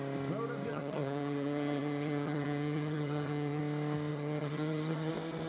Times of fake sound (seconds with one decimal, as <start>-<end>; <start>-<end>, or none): 0.7-3.6; 4.1-5.1